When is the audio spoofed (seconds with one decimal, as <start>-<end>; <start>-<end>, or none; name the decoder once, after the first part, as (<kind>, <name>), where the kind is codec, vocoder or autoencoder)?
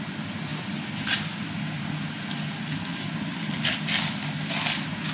0.5-3.6 (vocoder, BigVGAN v2)